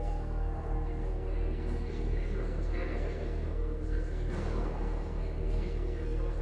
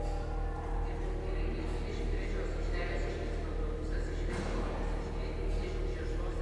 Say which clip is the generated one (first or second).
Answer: first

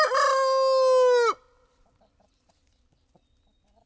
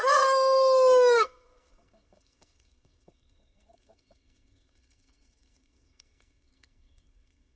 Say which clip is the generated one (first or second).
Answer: second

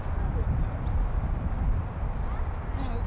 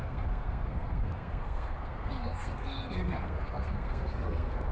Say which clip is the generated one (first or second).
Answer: second